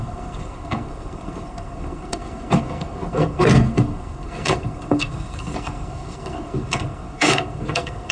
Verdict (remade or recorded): remade